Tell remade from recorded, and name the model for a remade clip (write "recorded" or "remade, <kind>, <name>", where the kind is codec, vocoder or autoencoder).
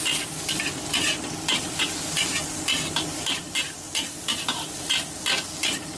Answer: recorded